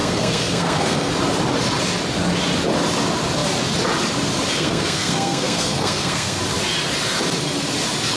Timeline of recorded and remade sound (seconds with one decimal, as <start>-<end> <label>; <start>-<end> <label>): 0.0-1.1 remade; 1.1-4.5 recorded; 4.5-6.4 remade; 6.4-8.2 recorded